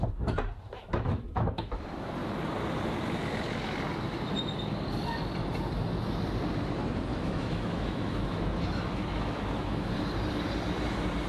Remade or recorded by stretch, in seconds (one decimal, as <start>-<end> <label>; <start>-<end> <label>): 0.0-0.8 recorded; 0.8-1.7 remade; 1.7-7.1 recorded; 7.1-9.9 remade; 9.9-11.3 recorded